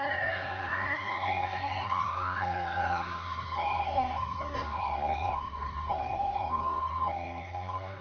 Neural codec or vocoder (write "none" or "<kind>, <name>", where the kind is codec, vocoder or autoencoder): codec, SNAC